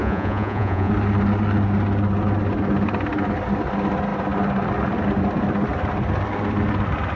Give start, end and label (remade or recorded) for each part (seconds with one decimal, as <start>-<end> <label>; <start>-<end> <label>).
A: 0.0-0.9 remade; 0.9-7.2 recorded